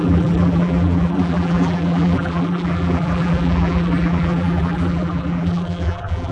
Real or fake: fake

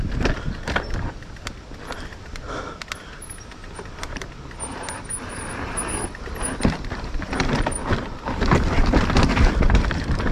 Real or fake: real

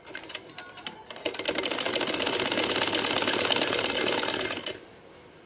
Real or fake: real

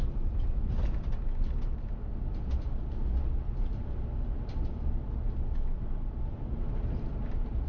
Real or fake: real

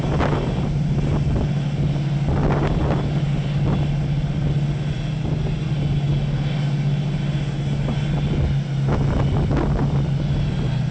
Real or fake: real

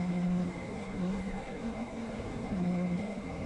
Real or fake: fake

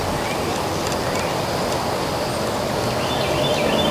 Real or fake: real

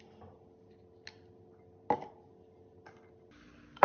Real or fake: real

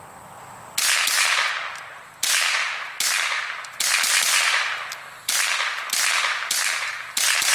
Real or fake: real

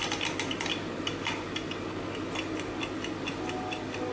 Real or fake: real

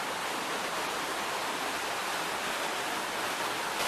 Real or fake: real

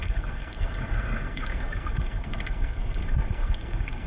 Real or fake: fake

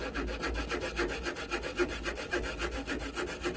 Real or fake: real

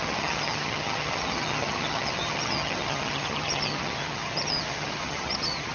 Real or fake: fake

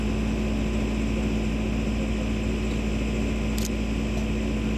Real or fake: real